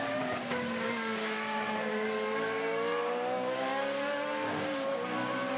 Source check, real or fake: fake